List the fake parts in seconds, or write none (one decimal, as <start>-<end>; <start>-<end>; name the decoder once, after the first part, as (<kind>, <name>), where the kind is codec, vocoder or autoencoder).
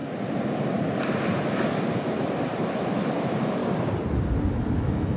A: 2.7-3.6 (autoencoder, DAC-VAE); 4.8-5.2